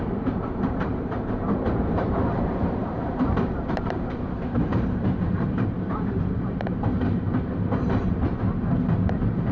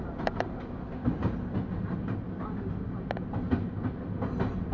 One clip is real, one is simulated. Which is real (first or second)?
second